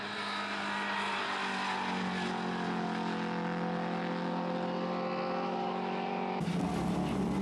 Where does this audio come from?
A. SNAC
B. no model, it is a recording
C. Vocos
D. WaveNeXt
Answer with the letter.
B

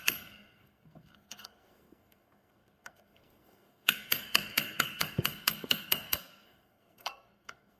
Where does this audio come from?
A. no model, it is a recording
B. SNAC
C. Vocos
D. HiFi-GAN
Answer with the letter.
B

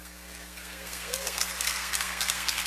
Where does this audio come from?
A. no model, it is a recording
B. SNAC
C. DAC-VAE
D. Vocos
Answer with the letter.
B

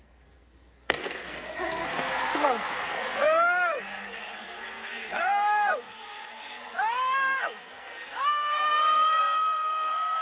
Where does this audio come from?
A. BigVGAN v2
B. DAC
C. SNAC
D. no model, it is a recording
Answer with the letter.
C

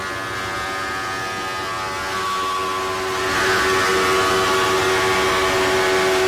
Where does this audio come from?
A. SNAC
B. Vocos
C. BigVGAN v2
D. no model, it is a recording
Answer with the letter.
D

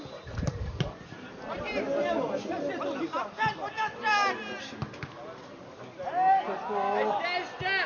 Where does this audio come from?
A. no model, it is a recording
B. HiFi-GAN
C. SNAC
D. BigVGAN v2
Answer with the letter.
A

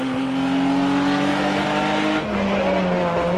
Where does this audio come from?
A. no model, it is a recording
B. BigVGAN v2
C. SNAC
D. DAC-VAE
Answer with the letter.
A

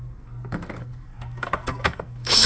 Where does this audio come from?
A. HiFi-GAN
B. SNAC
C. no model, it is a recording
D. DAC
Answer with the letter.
B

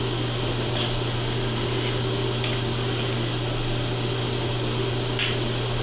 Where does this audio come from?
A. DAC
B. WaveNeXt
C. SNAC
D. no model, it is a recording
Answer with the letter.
D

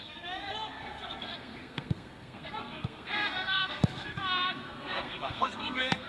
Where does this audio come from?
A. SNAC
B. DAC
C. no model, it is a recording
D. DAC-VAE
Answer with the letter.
A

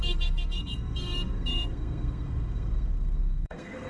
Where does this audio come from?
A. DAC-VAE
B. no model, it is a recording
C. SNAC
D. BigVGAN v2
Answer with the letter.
C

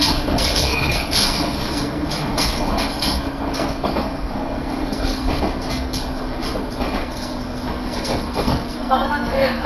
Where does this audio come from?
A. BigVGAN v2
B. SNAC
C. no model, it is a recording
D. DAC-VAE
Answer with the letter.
B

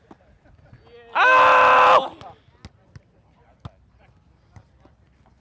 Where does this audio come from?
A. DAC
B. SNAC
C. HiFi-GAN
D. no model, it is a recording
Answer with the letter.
D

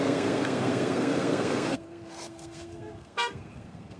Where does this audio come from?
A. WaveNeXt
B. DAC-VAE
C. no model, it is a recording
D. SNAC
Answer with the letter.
D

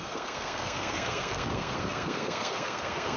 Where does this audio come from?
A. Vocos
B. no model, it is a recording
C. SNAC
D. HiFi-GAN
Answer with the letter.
C